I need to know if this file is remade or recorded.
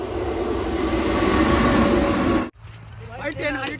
recorded